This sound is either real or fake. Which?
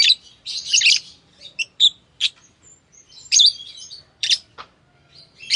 fake